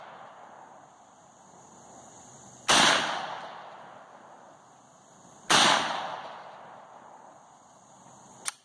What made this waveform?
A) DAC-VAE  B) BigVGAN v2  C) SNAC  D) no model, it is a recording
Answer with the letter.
D